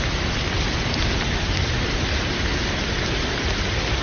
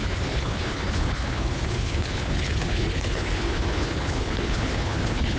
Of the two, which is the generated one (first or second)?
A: second